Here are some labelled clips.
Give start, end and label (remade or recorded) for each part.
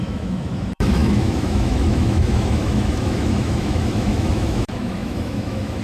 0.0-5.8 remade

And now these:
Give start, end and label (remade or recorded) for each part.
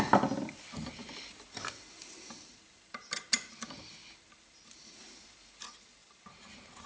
0.0-6.9 recorded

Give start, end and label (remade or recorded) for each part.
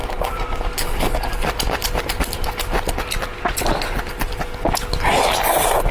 0.0-5.9 recorded